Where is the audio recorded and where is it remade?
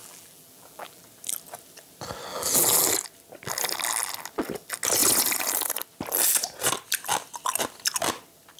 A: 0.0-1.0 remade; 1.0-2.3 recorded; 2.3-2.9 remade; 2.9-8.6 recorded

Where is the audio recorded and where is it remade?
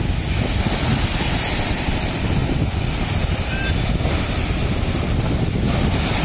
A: 0.0-6.2 recorded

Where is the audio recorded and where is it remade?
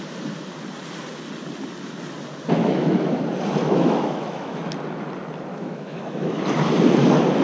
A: 0.0-2.6 recorded; 2.6-3.2 remade; 3.2-3.6 recorded; 3.6-4.6 remade; 4.6-5.5 recorded; 5.5-6.4 remade; 6.4-7.4 recorded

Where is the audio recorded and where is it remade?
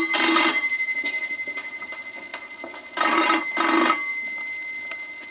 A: 0.0-5.3 recorded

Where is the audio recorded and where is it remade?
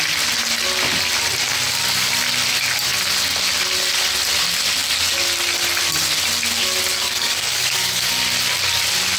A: 0.0-6.9 recorded; 6.9-8.1 remade; 8.1-9.2 recorded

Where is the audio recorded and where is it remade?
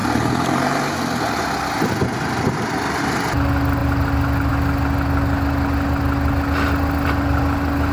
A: 0.0-7.9 recorded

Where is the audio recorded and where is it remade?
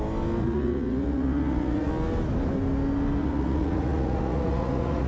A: 0.0-0.4 recorded; 0.4-1.9 remade; 1.9-3.2 recorded; 3.2-5.1 remade